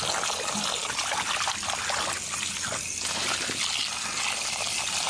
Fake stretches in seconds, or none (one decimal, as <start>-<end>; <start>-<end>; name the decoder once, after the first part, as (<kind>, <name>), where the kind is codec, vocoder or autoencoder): none